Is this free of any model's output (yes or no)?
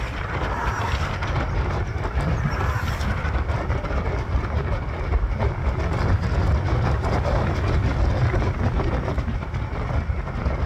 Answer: yes